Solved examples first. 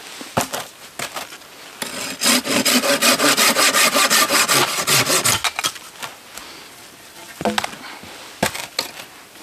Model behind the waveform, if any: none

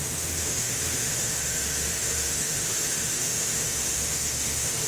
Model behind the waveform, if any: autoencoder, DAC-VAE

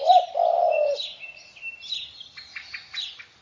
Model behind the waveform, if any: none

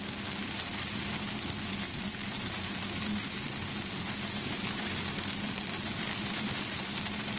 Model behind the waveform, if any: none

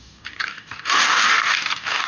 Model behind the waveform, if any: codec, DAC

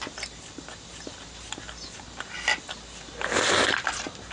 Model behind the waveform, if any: none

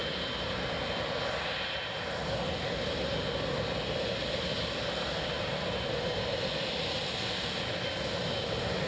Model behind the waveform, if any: none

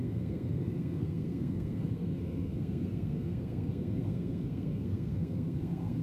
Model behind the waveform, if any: codec, SNAC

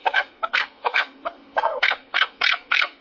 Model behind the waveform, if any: codec, SNAC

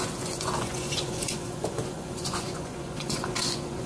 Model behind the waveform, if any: vocoder, Vocos